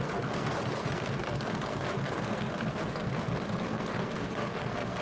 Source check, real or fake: fake